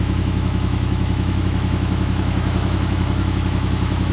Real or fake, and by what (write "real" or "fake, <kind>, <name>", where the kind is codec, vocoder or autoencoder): fake, autoencoder, DAC-VAE